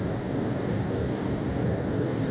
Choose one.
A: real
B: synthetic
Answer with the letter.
B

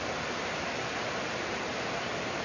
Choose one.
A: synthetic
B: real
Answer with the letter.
A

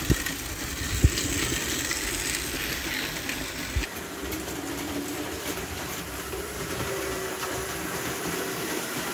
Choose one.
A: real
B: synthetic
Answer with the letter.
A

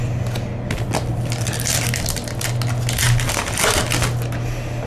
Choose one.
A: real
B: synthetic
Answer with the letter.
A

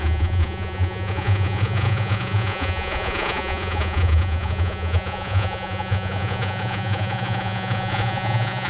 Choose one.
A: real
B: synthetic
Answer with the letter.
B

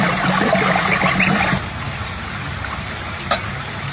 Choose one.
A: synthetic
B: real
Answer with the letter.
B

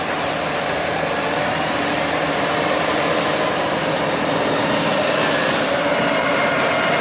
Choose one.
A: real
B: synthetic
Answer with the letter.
B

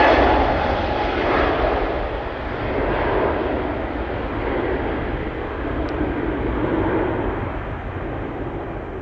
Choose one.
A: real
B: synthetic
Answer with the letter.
A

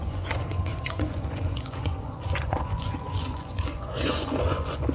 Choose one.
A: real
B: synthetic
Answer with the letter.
B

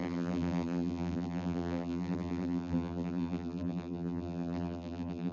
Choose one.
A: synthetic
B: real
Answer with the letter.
A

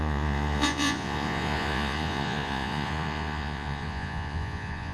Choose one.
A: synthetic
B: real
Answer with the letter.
A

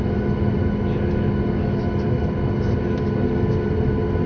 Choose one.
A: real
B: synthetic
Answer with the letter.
A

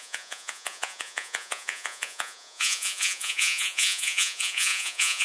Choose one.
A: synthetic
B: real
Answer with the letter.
A